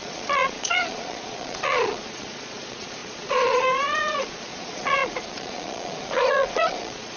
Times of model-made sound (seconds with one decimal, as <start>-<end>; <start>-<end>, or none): 0.0-7.2